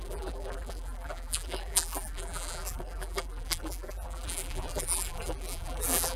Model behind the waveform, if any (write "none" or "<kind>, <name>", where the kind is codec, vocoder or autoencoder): vocoder, BigVGAN v2